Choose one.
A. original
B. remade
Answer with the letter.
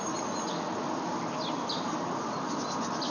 A